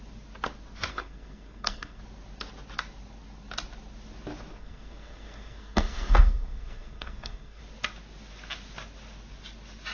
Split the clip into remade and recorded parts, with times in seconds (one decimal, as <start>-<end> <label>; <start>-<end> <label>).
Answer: 0.0-0.9 recorded; 0.9-2.0 remade; 2.0-4.5 recorded; 4.5-7.6 remade; 7.6-9.9 recorded